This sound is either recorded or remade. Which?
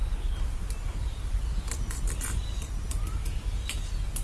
recorded